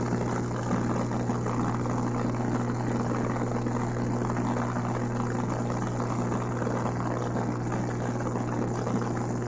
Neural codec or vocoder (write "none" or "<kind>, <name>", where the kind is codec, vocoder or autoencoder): none